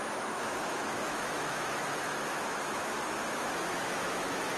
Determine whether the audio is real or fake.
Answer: fake